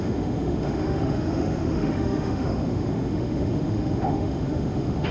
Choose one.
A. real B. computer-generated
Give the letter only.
B